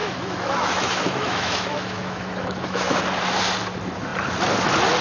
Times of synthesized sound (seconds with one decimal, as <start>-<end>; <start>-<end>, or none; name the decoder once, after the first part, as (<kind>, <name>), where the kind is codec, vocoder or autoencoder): 0.0-3.0 (autoencoder, DAC-VAE)